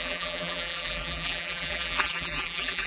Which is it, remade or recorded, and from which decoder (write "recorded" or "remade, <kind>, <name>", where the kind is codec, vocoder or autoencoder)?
remade, vocoder, BigVGAN v2